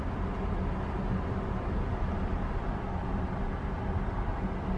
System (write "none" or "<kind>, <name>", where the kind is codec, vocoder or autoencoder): none